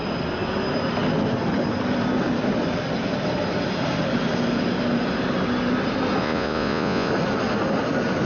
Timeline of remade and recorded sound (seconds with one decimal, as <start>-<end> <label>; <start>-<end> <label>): 0.0-6.2 recorded; 6.2-7.1 remade; 7.1-8.3 recorded